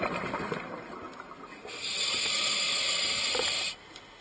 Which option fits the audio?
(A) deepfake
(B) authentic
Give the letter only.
B